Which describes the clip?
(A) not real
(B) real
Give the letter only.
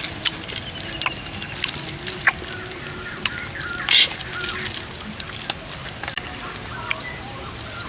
B